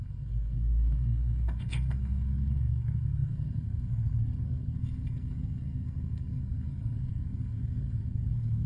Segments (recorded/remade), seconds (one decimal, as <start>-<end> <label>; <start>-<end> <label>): 0.0-8.7 remade